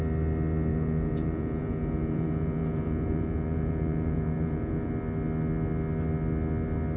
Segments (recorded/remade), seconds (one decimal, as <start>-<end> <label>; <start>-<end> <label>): 0.0-0.7 recorded; 0.7-4.9 remade; 4.9-7.0 recorded